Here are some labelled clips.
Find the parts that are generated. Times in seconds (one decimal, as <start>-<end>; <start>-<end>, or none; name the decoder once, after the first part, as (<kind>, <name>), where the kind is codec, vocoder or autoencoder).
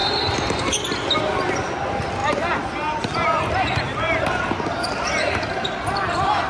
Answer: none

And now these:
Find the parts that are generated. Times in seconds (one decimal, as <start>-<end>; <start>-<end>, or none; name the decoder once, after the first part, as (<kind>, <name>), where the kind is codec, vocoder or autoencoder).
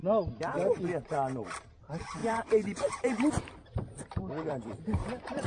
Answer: 0.8-5.5 (vocoder, BigVGAN v2)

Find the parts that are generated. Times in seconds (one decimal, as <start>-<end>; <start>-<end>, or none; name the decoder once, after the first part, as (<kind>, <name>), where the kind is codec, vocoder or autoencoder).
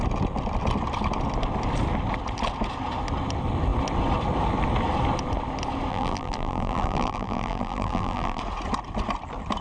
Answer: 5.9-8.4 (vocoder, BigVGAN v2)